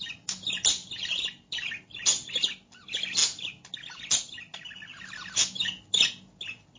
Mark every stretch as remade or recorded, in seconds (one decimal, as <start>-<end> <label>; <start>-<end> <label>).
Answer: 0.0-6.8 recorded